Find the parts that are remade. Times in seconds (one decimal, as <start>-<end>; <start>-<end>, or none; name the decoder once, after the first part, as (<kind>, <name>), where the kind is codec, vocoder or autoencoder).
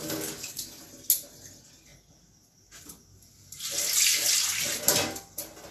0.0-0.8 (codec, DAC)